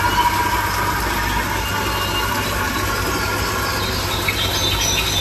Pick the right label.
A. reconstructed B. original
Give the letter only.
B